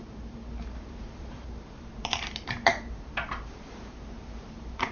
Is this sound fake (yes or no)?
yes